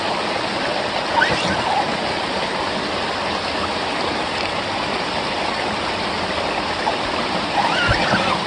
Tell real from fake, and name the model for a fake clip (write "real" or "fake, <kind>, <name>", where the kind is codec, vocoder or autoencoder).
real